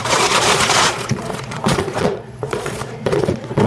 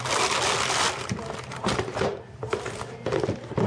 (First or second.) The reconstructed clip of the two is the first